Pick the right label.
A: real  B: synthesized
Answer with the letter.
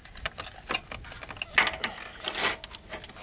A